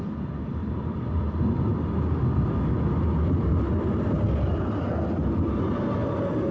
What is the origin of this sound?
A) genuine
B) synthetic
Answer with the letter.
A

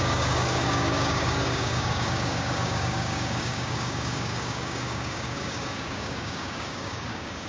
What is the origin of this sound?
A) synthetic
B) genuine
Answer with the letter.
A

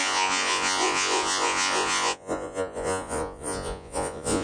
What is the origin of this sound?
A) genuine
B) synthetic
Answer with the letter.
B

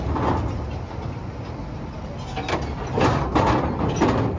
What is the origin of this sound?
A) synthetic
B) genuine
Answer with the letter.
B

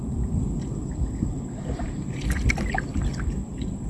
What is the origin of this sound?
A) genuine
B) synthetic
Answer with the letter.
A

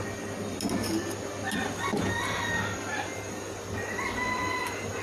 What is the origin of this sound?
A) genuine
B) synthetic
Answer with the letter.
A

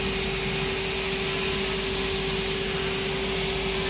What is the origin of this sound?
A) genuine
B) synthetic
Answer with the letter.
A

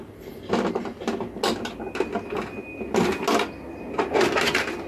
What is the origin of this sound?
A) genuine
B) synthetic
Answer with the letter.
A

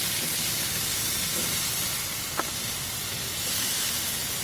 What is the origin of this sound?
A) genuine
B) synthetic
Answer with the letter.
A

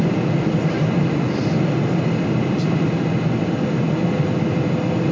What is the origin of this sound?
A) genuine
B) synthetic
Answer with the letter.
A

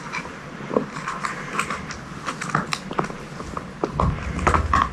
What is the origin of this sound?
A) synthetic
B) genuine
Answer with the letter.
B